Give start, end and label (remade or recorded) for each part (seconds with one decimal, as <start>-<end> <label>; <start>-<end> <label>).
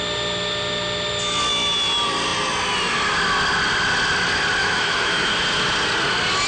0.0-4.6 recorded; 4.6-5.3 remade; 5.3-6.5 recorded